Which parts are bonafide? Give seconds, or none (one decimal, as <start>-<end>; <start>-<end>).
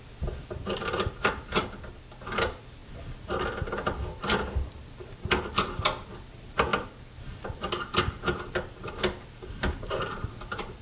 1.6-2.2; 2.8-5.4; 6.7-7.2